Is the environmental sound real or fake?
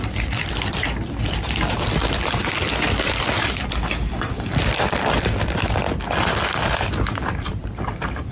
fake